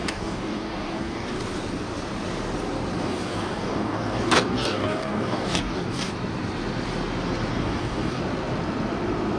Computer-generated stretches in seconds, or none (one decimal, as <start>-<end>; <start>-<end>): 0.0-1.4; 3.0-6.1; 7.5-8.2